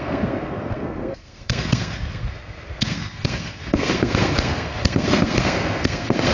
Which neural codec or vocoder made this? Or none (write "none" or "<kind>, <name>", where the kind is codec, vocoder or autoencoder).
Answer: codec, SNAC